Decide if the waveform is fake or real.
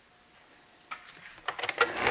real